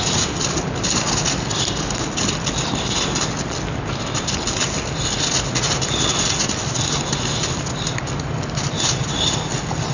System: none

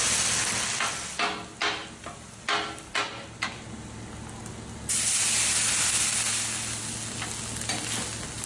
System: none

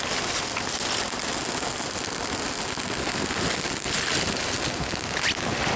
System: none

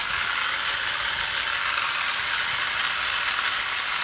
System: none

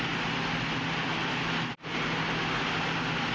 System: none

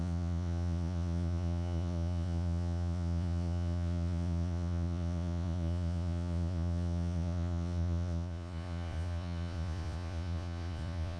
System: vocoder, Vocos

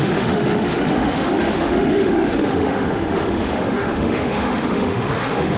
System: autoencoder, DAC-VAE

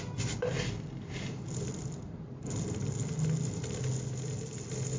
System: none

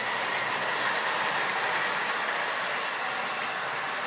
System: none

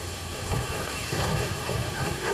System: codec, SNAC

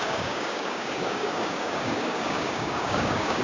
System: codec, DAC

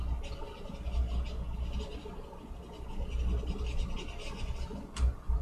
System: none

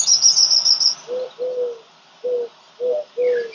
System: none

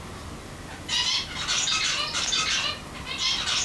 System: none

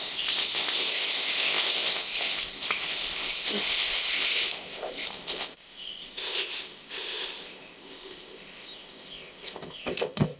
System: codec, ZipCodec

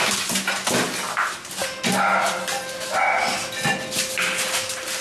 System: none